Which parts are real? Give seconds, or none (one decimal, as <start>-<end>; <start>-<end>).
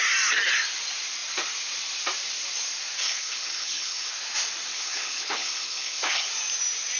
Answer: 0.0-3.0; 4.1-4.7; 6.3-7.0